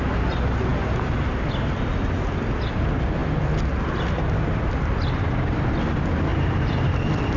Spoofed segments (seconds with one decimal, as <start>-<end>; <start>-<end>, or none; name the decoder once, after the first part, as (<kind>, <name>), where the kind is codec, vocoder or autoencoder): none

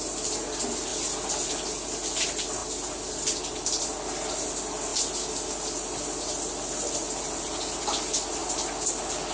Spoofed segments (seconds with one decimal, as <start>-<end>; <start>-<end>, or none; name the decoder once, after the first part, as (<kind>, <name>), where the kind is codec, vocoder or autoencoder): none